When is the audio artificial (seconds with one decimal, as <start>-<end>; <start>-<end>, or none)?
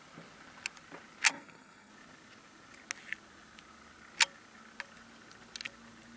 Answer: 1.3-1.9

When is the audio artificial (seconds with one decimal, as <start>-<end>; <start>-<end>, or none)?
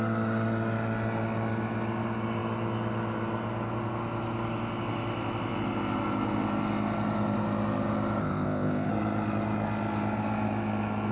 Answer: 8.2-8.9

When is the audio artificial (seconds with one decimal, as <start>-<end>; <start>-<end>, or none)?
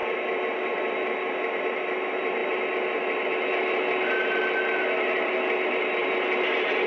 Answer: 6.0-6.9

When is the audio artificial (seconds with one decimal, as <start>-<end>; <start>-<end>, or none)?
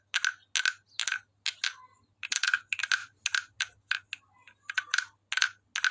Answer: none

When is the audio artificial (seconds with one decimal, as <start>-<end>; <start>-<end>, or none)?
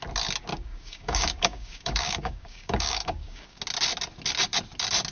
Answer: 0.5-3.6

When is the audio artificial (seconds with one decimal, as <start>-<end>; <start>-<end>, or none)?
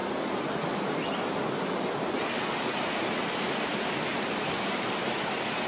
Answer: none